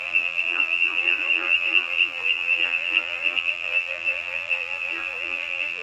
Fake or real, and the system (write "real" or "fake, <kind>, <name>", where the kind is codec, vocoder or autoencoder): fake, vocoder, BigVGAN v2